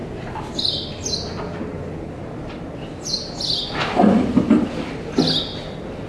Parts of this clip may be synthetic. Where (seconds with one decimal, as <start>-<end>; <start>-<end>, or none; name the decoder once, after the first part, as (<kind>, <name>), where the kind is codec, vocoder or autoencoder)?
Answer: none